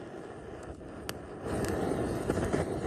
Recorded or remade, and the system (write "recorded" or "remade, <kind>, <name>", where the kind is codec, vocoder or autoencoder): recorded